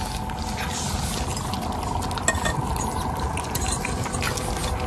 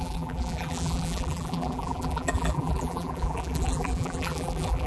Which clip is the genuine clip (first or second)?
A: first